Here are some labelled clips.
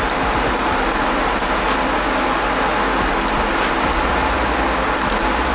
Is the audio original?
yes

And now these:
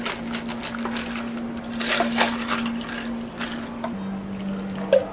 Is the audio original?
yes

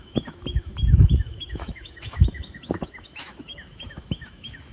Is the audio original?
no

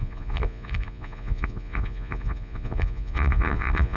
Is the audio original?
no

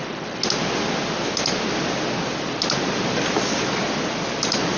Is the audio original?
yes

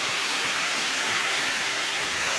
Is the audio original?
no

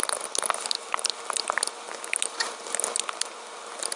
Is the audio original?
yes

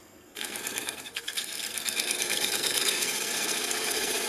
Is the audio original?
no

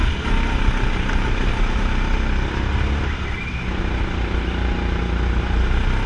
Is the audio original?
yes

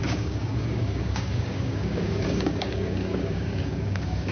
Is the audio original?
no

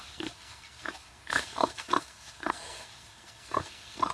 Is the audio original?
no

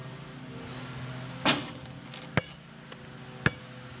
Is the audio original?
yes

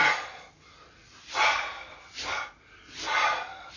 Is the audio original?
yes